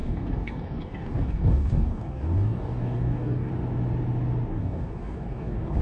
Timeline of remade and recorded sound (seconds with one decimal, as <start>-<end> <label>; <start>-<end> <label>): 0.0-3.5 remade; 3.5-4.5 recorded; 4.5-5.8 remade